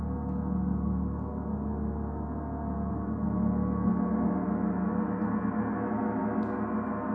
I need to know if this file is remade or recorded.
recorded